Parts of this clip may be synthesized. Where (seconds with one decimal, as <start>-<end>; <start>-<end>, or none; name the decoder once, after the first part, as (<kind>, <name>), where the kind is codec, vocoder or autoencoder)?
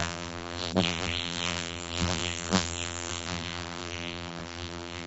0.0-5.1 (vocoder, BigVGAN v2)